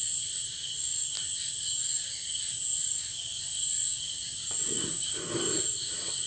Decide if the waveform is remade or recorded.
recorded